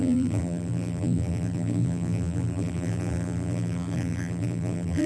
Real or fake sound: fake